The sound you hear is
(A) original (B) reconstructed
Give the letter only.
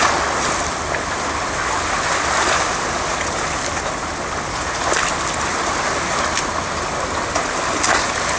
A